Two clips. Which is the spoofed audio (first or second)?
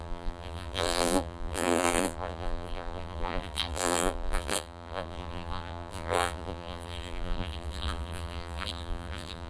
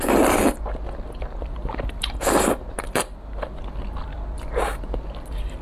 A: first